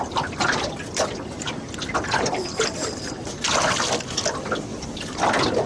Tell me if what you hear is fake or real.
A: fake